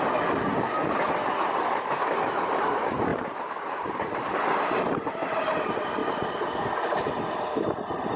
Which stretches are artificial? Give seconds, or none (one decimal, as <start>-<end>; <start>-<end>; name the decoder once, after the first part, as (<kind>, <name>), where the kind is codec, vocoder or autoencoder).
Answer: 3.1-4.4 (vocoder, BigVGAN v2); 6.0-8.2